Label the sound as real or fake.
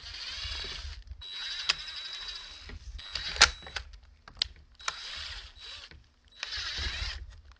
real